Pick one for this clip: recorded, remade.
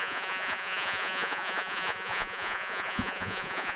remade